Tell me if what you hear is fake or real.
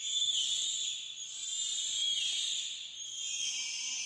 real